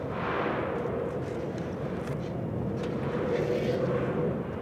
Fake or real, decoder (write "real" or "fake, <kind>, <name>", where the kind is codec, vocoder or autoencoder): real